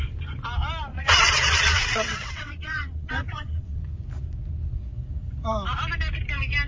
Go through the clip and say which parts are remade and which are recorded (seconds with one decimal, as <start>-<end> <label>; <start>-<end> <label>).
0.0-0.9 recorded; 0.9-3.8 remade; 3.8-6.7 recorded